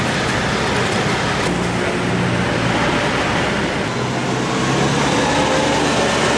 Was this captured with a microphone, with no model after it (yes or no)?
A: yes